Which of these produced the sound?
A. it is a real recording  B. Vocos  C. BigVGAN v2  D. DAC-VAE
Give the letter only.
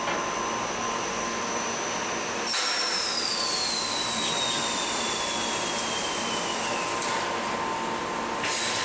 A